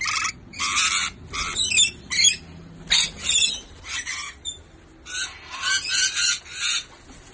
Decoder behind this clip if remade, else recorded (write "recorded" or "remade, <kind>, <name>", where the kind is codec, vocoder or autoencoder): recorded